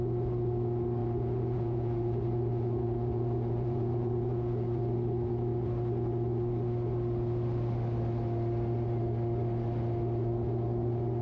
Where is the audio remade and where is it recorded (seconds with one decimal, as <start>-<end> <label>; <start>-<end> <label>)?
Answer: 0.0-1.0 recorded; 1.0-4.8 remade; 4.8-11.2 recorded